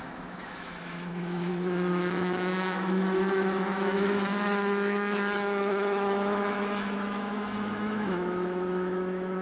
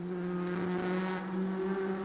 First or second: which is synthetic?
first